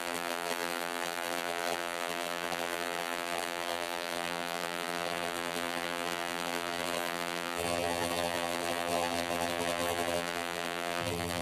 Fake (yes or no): yes